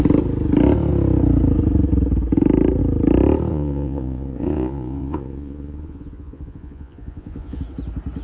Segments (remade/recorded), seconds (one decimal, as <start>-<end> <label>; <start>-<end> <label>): 0.0-3.5 recorded; 3.5-7.6 remade; 7.6-8.2 recorded